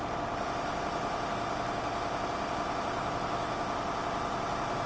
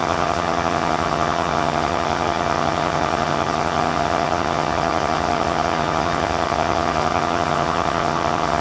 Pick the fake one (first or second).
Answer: second